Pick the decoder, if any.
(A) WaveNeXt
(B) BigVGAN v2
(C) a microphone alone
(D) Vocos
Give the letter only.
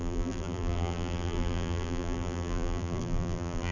B